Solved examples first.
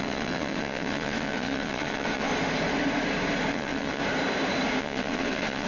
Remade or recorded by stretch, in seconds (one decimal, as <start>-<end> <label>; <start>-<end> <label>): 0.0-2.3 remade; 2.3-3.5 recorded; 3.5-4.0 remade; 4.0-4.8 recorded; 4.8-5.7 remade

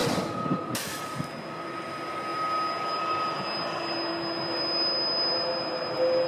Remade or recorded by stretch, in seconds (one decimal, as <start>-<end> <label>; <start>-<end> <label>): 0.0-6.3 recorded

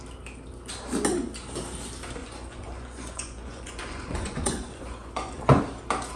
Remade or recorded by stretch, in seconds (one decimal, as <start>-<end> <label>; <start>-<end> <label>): 0.0-2.2 recorded; 2.2-5.6 remade; 5.6-6.2 recorded

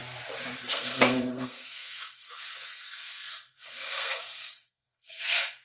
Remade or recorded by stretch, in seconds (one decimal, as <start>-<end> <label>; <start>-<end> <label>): 0.0-0.7 recorded; 0.7-5.6 remade